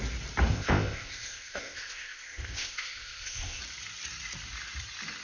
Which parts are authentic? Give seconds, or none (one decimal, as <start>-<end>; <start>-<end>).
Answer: 0.0-0.5; 3.6-5.2